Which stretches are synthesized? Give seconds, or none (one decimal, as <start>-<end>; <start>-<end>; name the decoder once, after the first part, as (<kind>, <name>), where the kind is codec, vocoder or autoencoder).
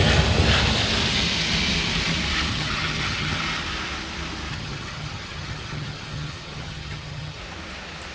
2.5-3.4 (vocoder, HiFi-GAN); 4.5-7.4